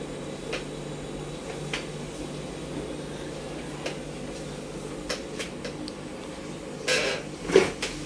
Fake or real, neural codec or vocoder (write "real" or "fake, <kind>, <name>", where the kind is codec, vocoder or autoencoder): real